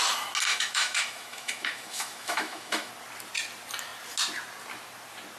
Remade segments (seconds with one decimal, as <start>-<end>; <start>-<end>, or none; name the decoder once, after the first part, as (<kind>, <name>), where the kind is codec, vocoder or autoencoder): 0.5-2.9 (autoencoder, DAC-VAE)